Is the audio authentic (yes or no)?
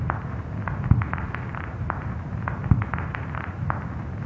no